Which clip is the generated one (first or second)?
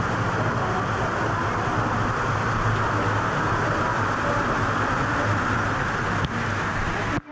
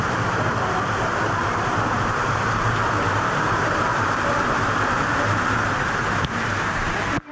second